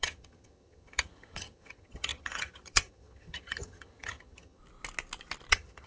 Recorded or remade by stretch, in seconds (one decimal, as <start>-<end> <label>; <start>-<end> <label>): 0.0-4.6 remade; 4.6-5.5 recorded; 5.5-5.9 remade